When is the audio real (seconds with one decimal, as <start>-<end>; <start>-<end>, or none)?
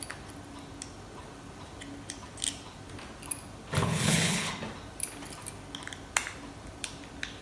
0.0-3.8; 4.5-7.4